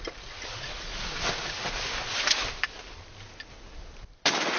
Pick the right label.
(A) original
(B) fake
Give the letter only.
A